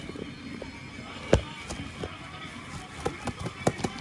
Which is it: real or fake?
real